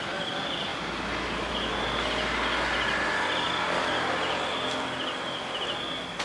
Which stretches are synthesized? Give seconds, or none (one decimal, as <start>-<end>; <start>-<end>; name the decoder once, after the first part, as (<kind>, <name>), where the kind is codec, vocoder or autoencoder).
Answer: none